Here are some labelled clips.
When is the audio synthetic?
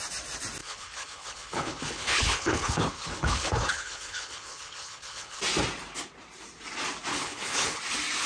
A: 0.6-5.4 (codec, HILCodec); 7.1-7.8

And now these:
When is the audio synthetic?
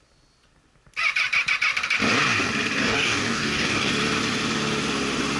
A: 2.8-3.9 (codec, DAC)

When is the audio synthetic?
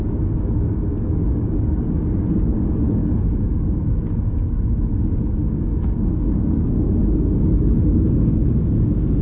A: 0.0-9.2 (codec, DAC)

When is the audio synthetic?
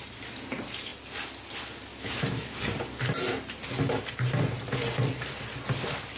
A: 1.9-2.6 (autoencoder, DAC-VAE)